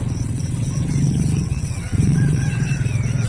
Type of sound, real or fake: fake